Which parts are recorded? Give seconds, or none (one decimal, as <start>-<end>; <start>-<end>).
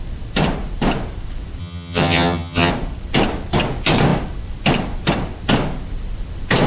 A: 0.0-1.6; 2.7-6.7